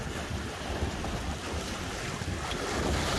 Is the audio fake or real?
real